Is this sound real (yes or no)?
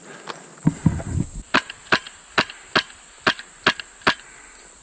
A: yes